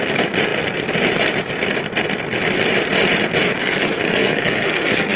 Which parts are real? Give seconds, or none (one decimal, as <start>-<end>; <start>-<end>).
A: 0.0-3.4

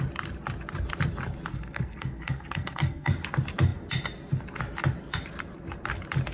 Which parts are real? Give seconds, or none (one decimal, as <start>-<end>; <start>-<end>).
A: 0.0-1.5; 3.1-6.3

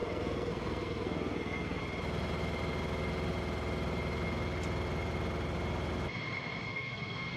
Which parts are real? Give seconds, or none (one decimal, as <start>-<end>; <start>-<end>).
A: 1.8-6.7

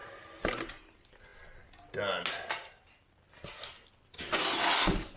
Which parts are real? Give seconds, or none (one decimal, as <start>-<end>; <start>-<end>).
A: 0.0-5.2

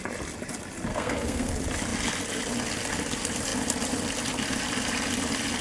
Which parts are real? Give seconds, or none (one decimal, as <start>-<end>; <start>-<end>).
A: 0.0-0.9; 1.5-5.6

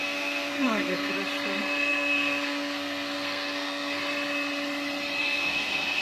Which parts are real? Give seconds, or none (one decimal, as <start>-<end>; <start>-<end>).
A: 1.1-1.6; 4.0-5.2